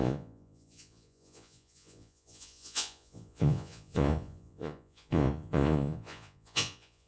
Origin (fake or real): fake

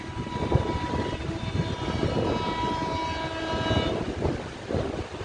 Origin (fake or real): real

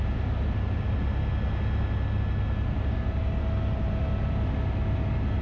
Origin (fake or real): real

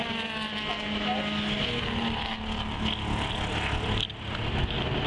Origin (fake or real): real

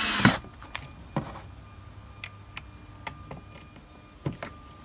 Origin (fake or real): real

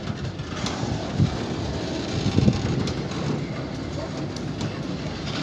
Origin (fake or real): real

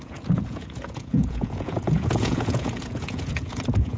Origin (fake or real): fake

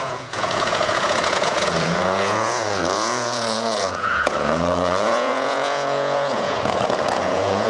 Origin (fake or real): fake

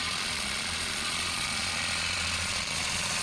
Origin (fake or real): fake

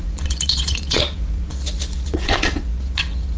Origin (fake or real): fake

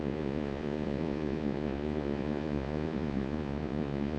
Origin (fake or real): fake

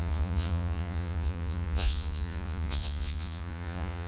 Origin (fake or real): fake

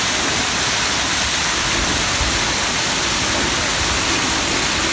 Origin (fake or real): real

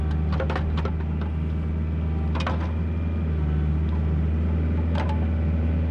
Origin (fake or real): real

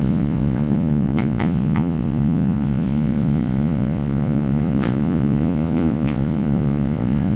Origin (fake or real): fake